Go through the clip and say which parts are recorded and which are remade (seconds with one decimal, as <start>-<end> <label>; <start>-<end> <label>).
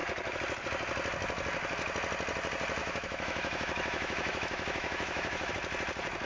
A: 0.0-2.8 recorded; 2.8-5.5 remade; 5.5-6.3 recorded